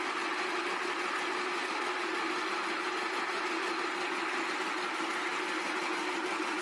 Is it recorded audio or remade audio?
recorded